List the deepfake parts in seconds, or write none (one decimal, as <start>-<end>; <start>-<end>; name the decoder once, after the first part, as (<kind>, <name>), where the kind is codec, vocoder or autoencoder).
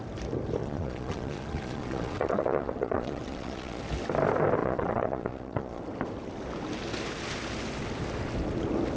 0.6-3.8 (vocoder, Vocos); 4.6-5.8